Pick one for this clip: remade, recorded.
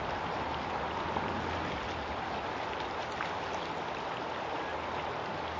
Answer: recorded